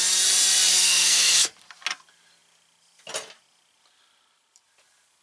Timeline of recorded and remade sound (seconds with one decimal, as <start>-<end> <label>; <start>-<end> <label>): 0.0-0.7 recorded; 0.7-1.5 remade; 1.5-5.2 recorded